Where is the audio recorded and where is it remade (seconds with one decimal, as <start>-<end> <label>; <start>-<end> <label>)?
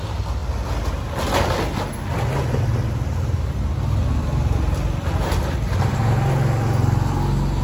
0.0-7.6 recorded